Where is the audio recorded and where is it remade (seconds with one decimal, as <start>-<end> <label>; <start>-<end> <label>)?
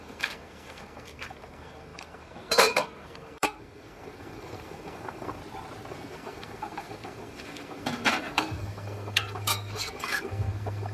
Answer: 0.0-5.4 remade; 5.4-5.9 recorded; 5.9-10.9 remade